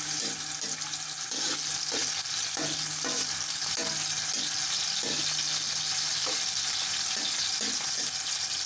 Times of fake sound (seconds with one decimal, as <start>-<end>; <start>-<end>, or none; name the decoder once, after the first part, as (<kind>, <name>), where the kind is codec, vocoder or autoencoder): none